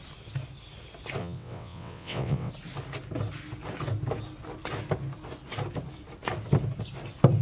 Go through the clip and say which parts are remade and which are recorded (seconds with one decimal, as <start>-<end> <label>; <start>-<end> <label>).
0.0-1.2 recorded; 1.2-2.5 remade; 2.5-7.4 recorded